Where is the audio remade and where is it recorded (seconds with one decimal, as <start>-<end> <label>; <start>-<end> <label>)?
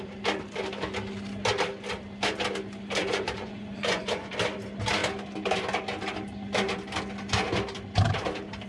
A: 0.0-3.0 recorded; 3.0-4.3 remade; 4.3-8.7 recorded